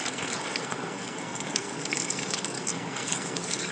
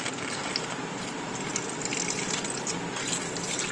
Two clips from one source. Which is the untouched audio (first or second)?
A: second